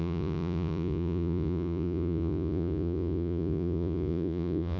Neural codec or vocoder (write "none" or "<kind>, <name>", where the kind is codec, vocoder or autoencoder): vocoder, Vocos